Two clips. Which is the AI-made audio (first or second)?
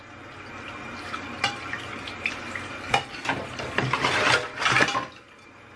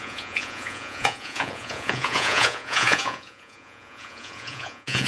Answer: second